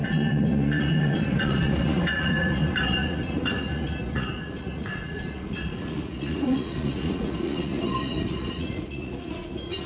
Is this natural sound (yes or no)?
no